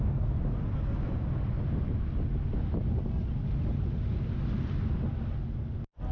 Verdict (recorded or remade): recorded